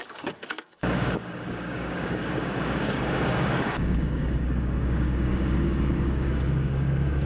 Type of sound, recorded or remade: remade